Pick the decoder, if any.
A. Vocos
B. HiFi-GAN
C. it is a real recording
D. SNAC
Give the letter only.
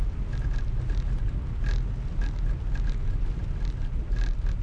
C